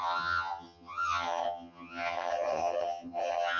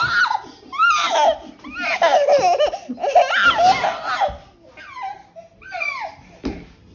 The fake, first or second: first